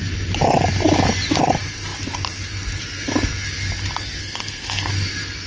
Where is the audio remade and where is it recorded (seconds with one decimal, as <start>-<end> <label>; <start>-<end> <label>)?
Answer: 0.0-4.2 recorded; 4.2-4.9 remade; 4.9-5.5 recorded